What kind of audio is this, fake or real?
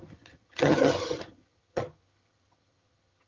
fake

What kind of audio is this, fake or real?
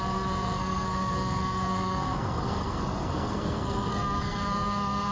fake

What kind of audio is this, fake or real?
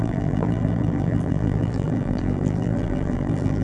fake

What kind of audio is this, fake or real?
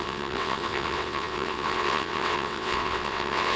fake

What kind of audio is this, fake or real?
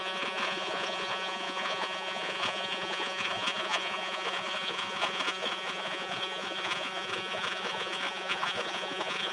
fake